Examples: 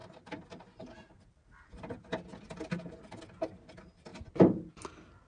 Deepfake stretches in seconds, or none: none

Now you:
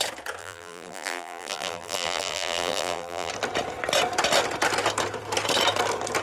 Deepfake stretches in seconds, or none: 0.4-3.3 (vocoder, BigVGAN v2)

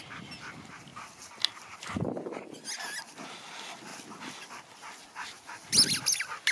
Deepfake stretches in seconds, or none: none

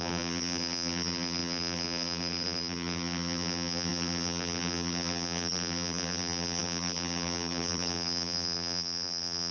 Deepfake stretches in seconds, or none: 0.0-9.5 (vocoder, BigVGAN v2)

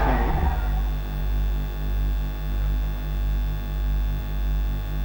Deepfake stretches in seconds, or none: none

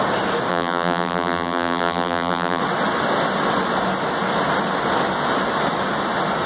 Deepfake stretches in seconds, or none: 0.5-2.6 (vocoder, BigVGAN v2)